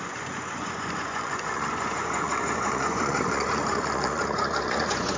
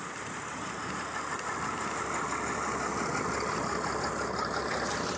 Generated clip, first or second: first